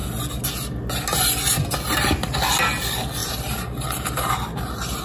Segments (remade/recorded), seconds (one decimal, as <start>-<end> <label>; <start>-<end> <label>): 0.0-3.2 recorded; 3.2-5.0 remade

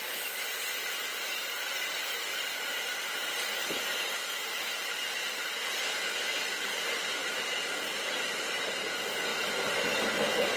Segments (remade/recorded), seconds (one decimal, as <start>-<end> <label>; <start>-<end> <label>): 0.0-7.2 recorded; 7.2-8.3 remade; 8.3-10.6 recorded

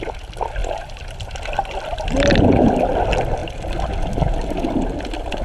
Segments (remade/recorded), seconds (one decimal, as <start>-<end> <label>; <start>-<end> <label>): 0.0-0.6 recorded; 0.6-2.3 remade; 2.3-5.4 recorded

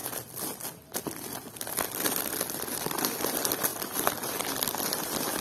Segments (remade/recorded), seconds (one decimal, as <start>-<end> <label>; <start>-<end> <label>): 0.0-5.4 recorded